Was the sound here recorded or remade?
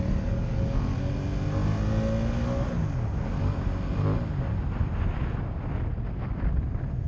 recorded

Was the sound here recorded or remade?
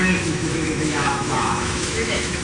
remade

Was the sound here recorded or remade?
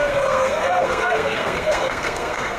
remade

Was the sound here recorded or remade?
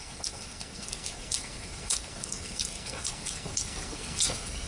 remade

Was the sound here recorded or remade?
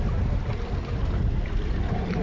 recorded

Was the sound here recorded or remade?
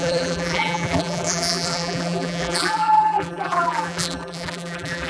remade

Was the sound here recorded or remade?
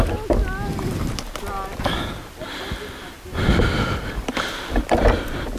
recorded